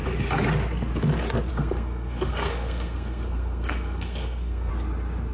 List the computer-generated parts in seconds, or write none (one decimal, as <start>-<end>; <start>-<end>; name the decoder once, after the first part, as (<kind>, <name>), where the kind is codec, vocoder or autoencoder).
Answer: 1.5-4.7 (codec, SNAC)